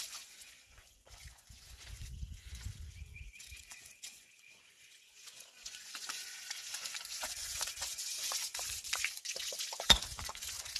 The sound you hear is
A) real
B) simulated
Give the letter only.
B